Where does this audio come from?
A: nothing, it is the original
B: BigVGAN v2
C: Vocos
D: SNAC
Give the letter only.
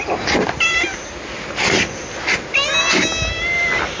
A